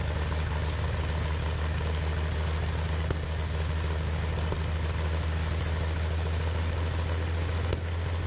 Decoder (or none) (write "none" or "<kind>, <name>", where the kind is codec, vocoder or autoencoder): none